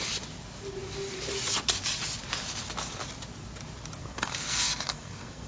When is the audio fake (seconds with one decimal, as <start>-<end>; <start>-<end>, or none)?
4.0-5.5